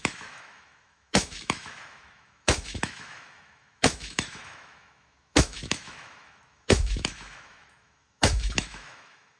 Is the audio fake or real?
fake